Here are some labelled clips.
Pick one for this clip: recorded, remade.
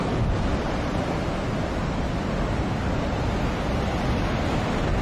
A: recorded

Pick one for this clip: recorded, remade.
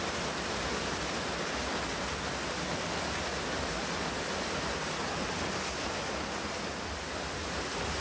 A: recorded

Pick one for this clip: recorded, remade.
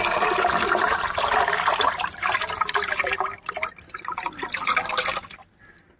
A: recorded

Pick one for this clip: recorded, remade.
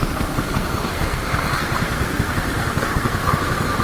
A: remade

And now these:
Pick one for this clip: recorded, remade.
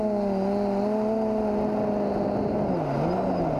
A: recorded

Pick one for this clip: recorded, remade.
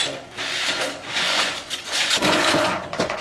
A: remade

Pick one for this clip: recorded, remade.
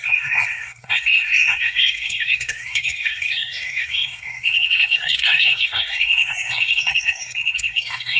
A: remade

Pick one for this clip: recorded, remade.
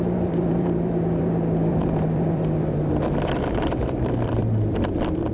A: remade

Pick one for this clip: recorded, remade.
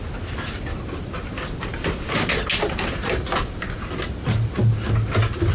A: recorded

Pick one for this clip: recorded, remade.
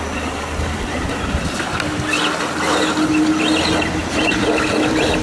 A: recorded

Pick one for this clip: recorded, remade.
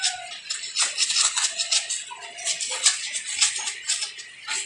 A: recorded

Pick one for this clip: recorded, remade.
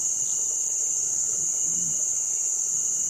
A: recorded